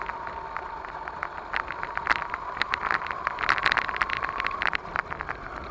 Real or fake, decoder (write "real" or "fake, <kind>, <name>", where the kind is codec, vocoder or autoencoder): fake, vocoder, BigVGAN v2